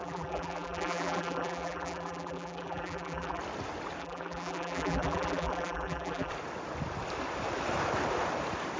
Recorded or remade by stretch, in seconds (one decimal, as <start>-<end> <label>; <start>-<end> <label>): 0.0-3.4 remade; 3.4-4.0 recorded; 4.0-6.3 remade; 6.3-8.8 recorded